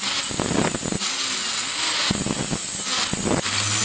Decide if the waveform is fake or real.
real